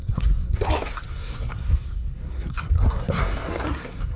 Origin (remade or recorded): remade